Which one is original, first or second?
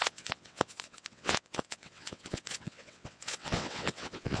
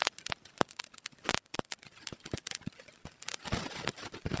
second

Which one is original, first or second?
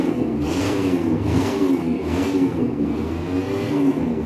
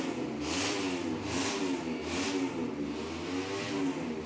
second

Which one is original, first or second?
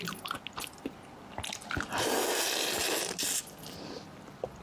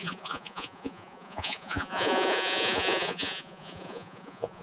first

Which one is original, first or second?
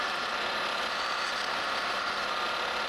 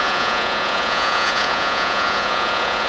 first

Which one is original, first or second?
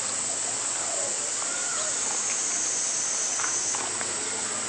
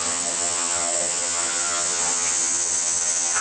first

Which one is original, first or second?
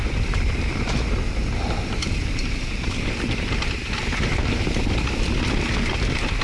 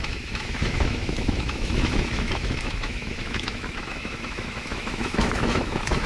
first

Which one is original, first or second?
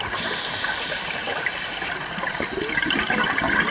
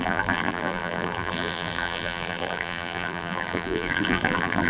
first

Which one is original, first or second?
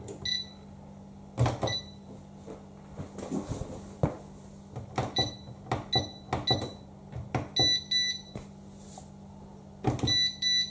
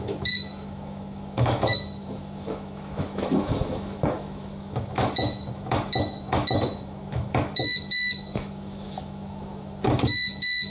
first